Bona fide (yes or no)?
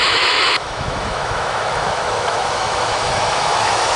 no